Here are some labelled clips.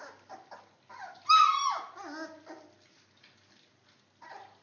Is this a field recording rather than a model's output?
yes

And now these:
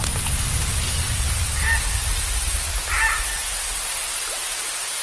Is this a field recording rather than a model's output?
yes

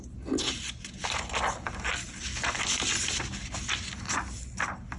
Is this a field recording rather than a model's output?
yes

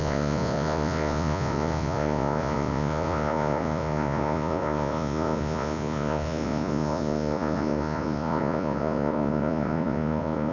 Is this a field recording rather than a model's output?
no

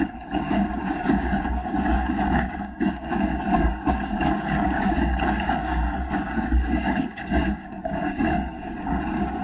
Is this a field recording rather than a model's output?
no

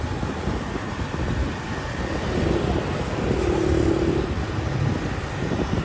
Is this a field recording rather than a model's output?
yes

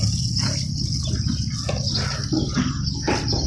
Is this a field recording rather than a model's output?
yes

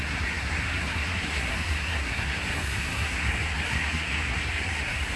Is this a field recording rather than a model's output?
no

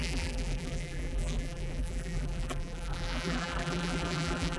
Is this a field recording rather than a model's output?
no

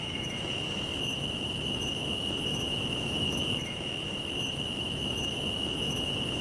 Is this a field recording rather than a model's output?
no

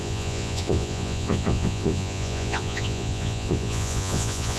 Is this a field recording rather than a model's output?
no